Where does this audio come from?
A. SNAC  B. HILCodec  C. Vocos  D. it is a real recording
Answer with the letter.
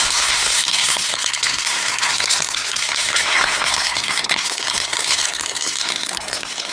A